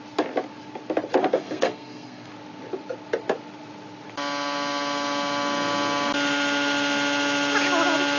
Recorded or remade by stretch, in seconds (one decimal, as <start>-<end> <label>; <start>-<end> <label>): 0.0-1.2 recorded; 1.2-2.3 remade; 2.3-8.2 recorded